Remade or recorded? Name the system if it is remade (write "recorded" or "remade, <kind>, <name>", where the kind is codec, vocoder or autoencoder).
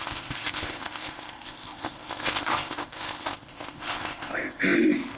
remade, codec, ZipCodec